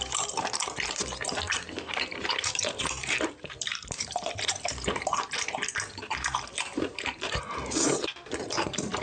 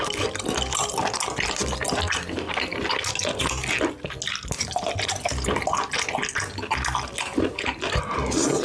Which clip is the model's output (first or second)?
first